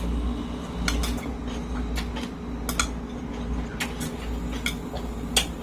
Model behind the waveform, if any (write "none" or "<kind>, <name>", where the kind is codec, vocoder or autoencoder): none